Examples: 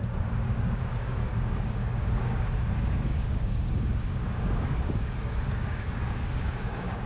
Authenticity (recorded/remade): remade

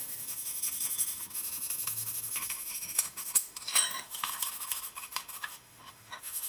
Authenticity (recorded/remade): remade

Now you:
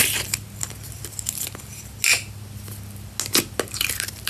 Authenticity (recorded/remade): recorded